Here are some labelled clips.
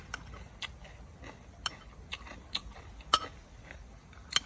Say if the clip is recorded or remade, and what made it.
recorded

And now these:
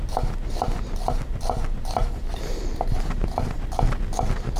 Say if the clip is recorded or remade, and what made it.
recorded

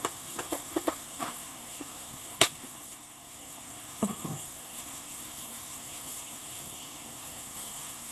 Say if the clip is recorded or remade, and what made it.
remade, codec, SNAC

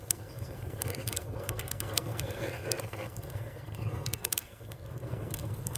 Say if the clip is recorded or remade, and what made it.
remade, codec, SNAC